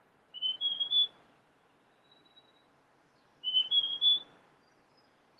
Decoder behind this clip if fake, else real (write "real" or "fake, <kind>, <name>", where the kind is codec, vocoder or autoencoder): fake, vocoder, BigVGAN v2